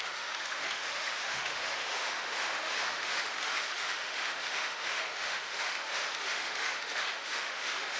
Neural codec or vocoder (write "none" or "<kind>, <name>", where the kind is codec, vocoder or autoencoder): autoencoder, DAC-VAE